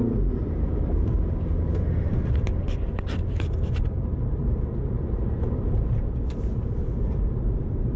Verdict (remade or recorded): remade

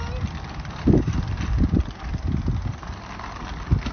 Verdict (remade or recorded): recorded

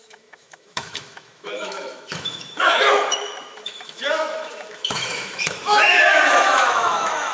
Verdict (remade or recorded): remade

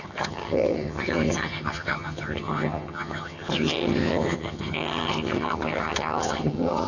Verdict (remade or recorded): remade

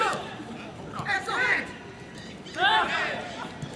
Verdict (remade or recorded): recorded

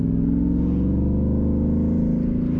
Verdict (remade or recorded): recorded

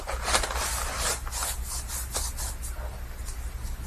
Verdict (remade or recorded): recorded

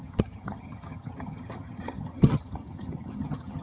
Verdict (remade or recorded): remade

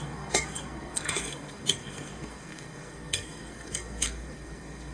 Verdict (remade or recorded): remade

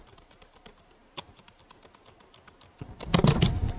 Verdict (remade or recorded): recorded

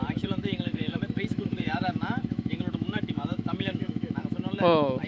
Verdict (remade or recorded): remade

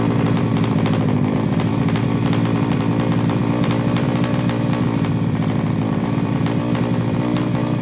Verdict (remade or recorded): remade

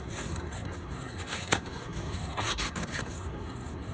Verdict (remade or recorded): remade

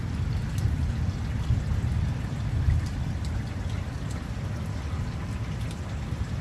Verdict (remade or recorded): recorded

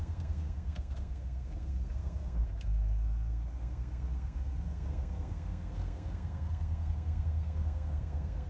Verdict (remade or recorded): remade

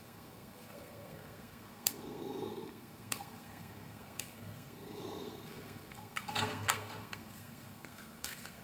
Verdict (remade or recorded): remade